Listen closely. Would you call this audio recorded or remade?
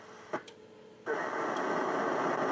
recorded